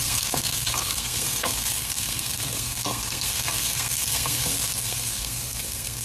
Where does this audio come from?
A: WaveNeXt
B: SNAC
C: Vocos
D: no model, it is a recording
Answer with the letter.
B